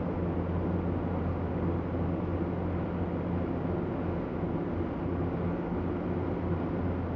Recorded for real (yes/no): yes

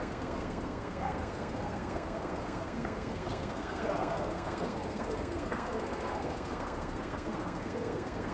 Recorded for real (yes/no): no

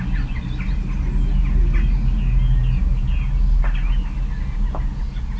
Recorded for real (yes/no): yes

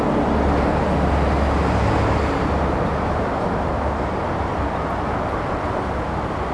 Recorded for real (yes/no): yes